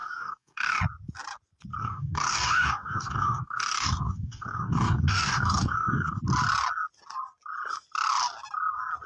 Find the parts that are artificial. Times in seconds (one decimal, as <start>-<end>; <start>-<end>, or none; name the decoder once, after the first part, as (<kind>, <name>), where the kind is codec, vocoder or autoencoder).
0.0-0.8 (codec, DAC); 1.8-6.2